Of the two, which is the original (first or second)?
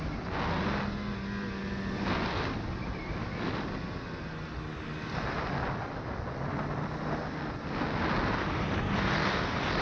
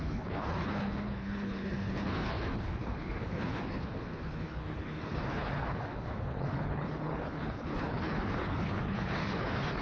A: first